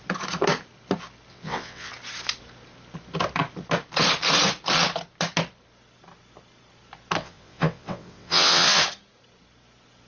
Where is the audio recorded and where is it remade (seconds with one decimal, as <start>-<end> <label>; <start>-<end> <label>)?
0.0-1.3 recorded; 1.3-1.9 remade; 1.9-7.2 recorded; 7.2-8.8 remade; 8.8-10.1 recorded